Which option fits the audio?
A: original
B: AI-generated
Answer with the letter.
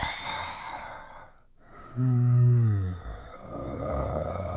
B